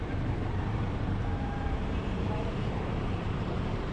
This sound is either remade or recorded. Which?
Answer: remade